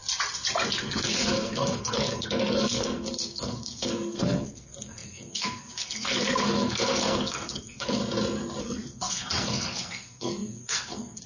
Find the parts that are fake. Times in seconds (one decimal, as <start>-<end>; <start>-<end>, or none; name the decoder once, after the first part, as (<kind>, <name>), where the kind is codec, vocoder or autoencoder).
0.8-8.0 (codec, SNAC); 8.6-11.3